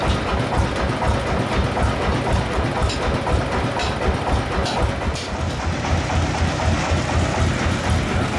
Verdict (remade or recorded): recorded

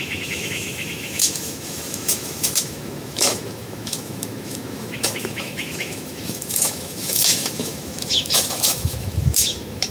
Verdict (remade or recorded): remade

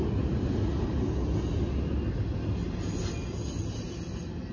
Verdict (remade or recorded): recorded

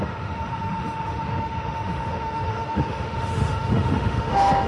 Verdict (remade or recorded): remade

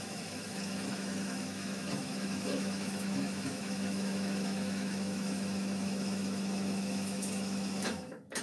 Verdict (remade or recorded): remade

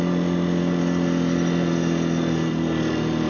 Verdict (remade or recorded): recorded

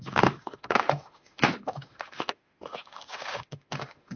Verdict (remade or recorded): remade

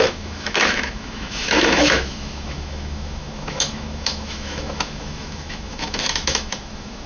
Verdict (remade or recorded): remade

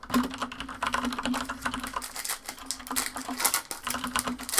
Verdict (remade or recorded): recorded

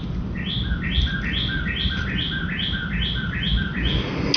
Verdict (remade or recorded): recorded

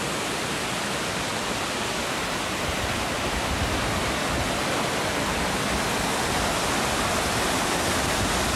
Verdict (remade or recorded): recorded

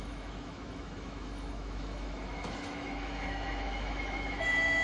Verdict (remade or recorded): remade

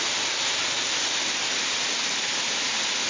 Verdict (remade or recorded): recorded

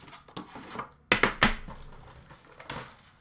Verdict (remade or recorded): recorded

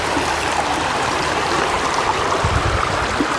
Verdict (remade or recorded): recorded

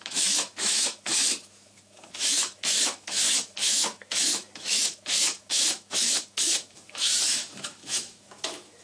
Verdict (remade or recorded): remade